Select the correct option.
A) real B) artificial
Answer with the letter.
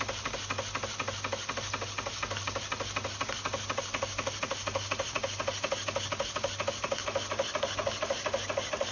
A